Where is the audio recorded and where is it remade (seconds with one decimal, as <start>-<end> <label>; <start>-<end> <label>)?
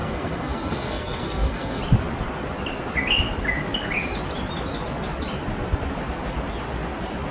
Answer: 0.0-1.8 remade; 1.8-7.3 recorded